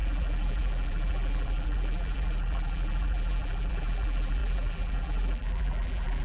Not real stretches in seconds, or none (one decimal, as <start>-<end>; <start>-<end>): 0.0-6.2